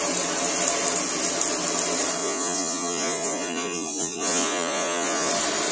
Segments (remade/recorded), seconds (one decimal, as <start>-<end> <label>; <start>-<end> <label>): 0.0-2.2 recorded; 2.2-5.3 remade; 5.3-5.7 recorded